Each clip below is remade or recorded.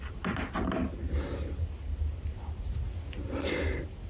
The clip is recorded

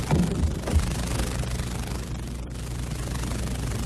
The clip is recorded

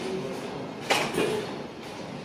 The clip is recorded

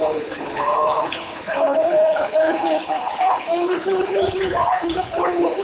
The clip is remade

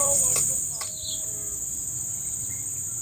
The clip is remade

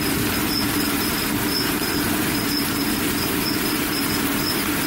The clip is recorded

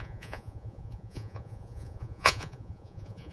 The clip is remade